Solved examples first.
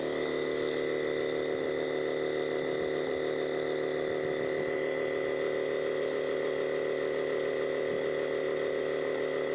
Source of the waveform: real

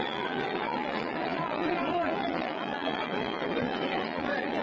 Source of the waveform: fake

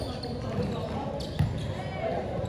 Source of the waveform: real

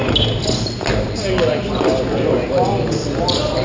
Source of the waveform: real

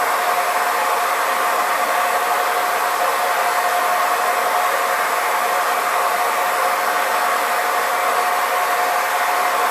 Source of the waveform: real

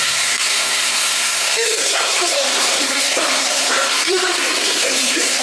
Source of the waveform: fake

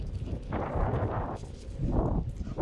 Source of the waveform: fake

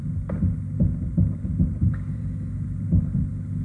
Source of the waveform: fake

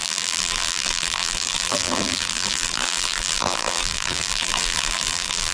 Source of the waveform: fake